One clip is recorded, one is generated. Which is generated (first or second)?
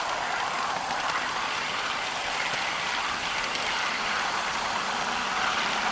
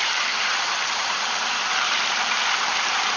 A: second